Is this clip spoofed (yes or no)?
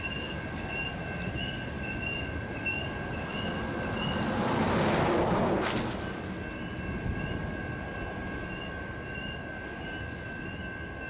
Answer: no